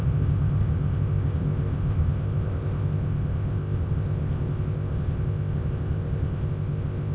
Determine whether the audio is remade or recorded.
remade